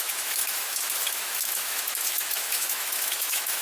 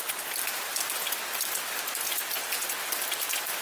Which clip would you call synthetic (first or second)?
first